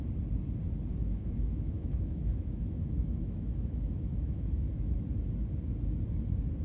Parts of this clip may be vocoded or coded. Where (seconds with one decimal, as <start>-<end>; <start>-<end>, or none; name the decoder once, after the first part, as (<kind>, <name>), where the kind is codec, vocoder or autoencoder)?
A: 1.0-5.0 (autoencoder, DAC-VAE)